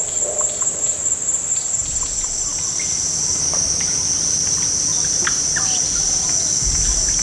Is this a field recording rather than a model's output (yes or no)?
yes